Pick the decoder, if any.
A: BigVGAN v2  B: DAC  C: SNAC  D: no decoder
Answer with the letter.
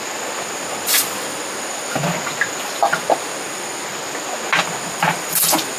D